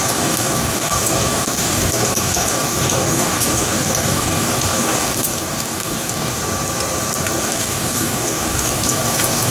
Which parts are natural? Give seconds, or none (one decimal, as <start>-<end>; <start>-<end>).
6.4-7.4